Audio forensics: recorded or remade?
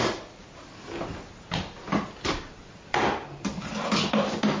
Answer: recorded